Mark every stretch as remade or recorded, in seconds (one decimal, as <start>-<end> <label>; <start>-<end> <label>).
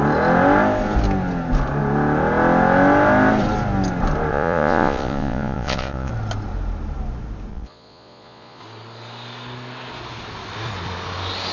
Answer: 0.0-4.3 recorded; 4.3-6.1 remade; 6.1-7.5 recorded; 7.5-8.6 remade; 8.6-11.5 recorded